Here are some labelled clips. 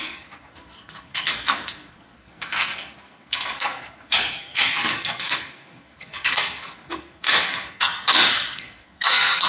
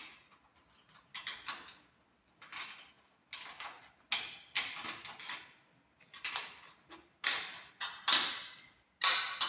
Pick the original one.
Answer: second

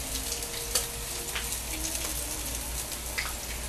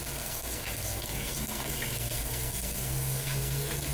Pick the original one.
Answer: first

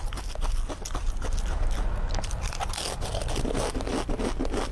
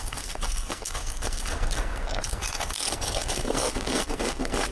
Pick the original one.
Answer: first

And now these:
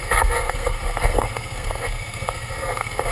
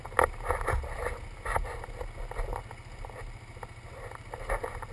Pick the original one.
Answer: second